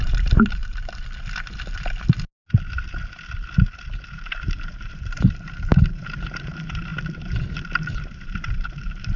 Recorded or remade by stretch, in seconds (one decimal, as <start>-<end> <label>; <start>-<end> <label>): 0.0-0.6 remade; 0.6-4.1 recorded; 4.1-9.2 remade